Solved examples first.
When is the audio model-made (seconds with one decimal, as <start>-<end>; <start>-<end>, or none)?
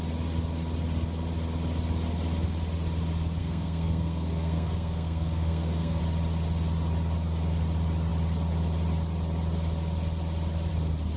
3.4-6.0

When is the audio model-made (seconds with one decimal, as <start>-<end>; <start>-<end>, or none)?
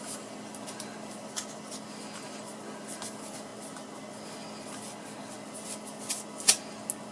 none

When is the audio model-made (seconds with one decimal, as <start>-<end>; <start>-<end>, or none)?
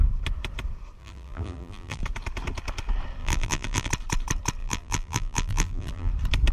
1.0-2.0; 3.2-3.9; 4.6-6.1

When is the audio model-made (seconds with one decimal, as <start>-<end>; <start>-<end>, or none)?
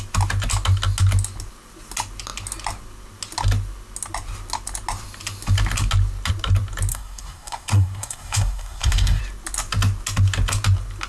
6.9-9.2